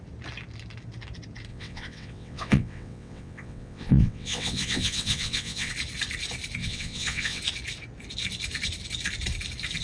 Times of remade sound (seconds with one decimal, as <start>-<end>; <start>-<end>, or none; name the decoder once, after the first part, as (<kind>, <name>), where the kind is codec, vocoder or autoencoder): 1.5-5.7 (vocoder, WaveNeXt); 6.6-7.4